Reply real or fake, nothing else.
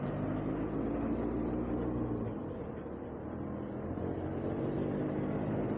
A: real